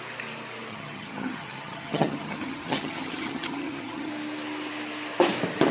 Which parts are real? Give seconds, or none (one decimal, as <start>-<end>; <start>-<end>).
0.0-0.7; 4.1-5.7